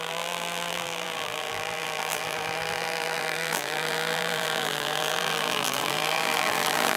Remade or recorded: remade